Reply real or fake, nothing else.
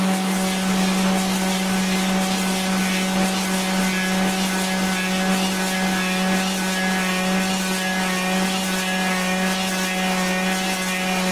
real